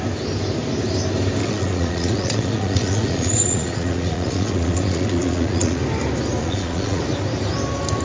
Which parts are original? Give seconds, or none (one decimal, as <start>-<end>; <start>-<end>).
0.0-1.4; 5.8-6.4; 7.0-8.0